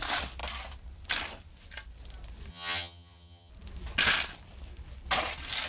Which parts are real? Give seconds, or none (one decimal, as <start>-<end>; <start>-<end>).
0.0-2.5; 3.5-5.7